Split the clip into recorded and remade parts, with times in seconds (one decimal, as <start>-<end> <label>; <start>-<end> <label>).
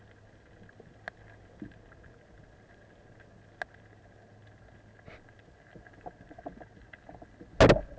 0.0-8.0 recorded